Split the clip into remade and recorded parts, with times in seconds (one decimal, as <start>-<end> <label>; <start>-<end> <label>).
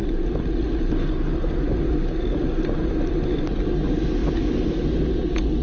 0.0-5.6 recorded